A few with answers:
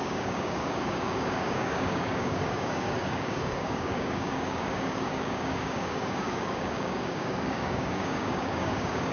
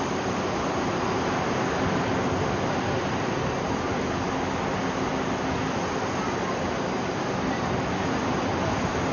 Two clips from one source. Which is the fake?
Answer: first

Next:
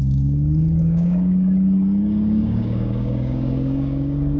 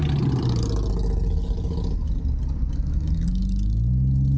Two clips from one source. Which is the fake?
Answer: first